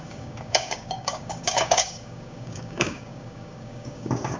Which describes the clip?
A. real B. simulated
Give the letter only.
B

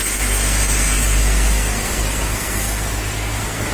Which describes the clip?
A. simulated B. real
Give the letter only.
A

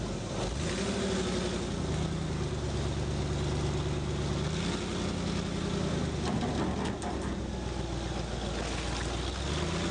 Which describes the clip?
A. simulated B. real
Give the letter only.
B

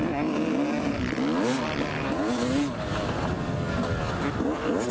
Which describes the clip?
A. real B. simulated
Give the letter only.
A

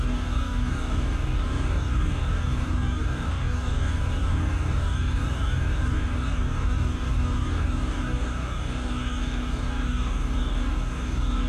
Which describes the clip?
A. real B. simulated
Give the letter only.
B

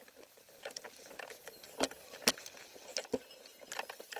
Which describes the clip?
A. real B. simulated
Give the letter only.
A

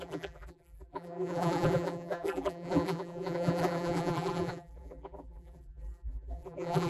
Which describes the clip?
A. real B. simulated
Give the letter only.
B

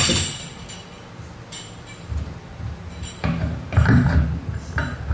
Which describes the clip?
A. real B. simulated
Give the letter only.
A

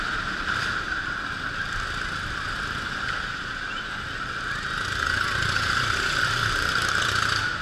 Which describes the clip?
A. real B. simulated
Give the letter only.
B